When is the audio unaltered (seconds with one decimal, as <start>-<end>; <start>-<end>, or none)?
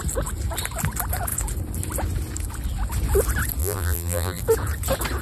0.0-3.6; 4.4-5.2